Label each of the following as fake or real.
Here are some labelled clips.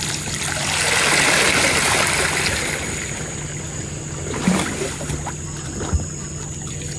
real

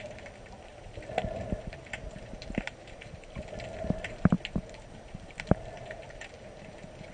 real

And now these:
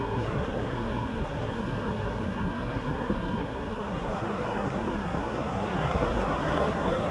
fake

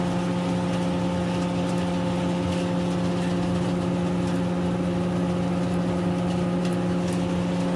real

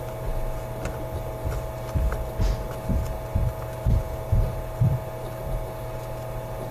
real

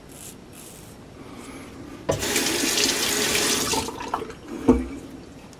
real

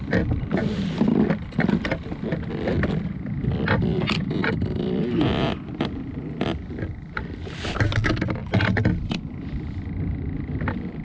real